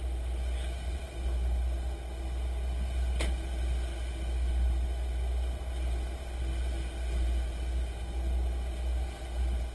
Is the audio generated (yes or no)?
no